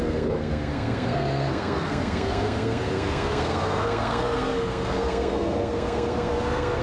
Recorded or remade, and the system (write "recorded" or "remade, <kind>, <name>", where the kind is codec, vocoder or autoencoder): remade, codec, SNAC